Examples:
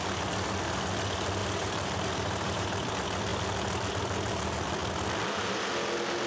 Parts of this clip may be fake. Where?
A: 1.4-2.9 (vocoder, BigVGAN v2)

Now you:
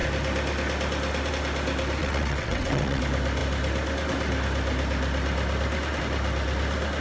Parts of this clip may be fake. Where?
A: 2.0-3.0 (vocoder, WaveNeXt)